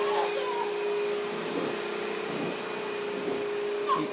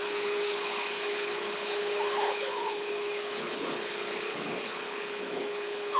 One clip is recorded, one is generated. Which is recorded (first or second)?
first